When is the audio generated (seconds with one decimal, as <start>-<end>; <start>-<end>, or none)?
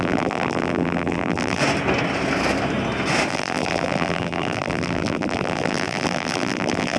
0.0-1.6; 3.3-7.0